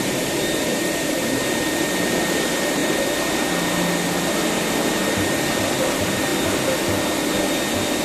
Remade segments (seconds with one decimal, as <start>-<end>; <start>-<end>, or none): 0.0-2.8; 4.9-6.3